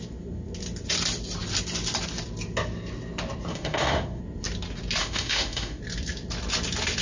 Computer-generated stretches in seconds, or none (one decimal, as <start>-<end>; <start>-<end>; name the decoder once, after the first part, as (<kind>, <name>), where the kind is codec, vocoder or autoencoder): 3.5-4.2 (autoencoder, DAC-VAE); 5.0-5.8